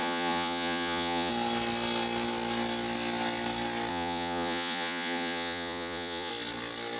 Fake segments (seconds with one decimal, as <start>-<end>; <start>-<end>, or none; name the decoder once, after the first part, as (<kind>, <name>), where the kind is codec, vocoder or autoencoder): 0.0-1.3 (vocoder, Vocos); 3.9-6.3